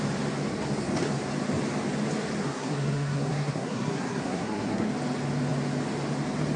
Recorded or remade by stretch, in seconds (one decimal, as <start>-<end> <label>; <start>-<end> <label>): 0.0-2.4 recorded; 2.4-4.9 remade; 4.9-6.6 recorded